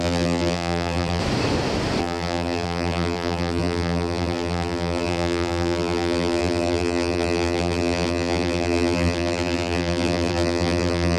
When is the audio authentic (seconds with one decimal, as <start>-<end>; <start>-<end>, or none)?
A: 1.2-2.0